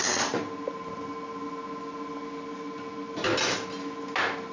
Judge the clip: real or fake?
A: real